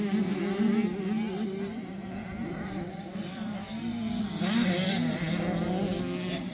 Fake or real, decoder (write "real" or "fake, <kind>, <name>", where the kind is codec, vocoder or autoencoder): real